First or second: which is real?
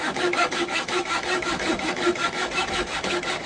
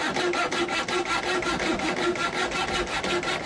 second